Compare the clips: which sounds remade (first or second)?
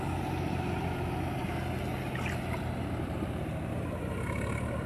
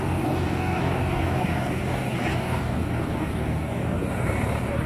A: second